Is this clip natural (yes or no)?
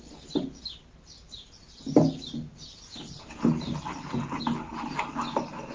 yes